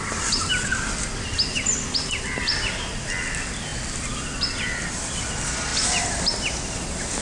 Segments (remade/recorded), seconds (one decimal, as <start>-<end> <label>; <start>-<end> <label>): 0.0-7.2 recorded